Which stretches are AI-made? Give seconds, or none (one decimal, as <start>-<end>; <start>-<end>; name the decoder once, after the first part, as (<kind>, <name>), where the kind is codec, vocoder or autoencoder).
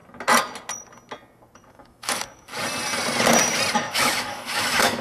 1.7-2.5 (autoencoder, DAC-VAE); 3.8-5.0